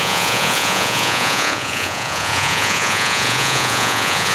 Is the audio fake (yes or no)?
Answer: yes